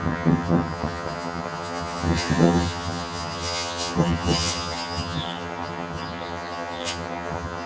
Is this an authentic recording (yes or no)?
no